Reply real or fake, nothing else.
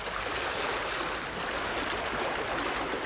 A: real